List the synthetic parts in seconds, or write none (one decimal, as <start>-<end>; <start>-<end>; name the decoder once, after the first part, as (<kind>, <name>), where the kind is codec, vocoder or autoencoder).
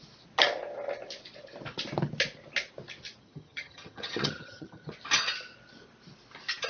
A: 3.2-4.9 (vocoder, HiFi-GAN)